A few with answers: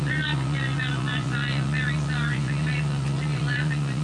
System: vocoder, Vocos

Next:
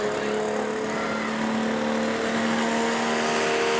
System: none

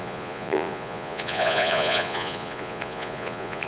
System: vocoder, Vocos